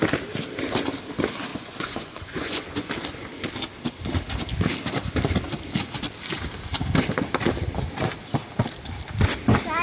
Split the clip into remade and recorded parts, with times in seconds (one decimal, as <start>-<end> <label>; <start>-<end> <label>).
0.0-1.5 recorded; 1.5-2.9 remade; 2.9-9.8 recorded